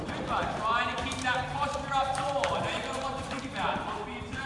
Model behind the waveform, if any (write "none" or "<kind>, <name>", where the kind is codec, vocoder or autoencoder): vocoder, BigVGAN v2